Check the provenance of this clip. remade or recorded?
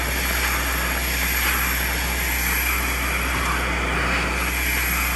recorded